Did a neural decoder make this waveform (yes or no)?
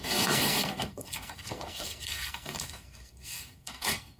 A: yes